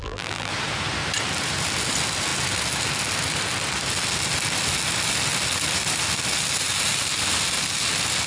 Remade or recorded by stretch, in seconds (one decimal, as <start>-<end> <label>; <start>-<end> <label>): 0.0-0.5 remade; 0.5-8.3 recorded